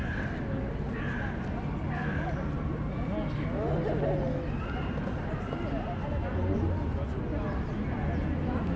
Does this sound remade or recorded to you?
recorded